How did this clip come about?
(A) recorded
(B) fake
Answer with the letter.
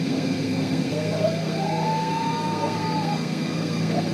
B